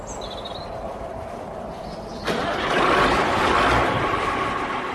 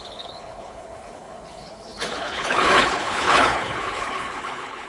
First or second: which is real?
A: first